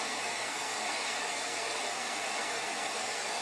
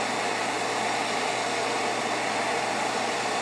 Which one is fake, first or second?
first